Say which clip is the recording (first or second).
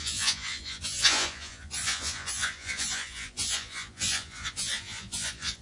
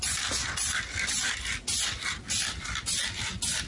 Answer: second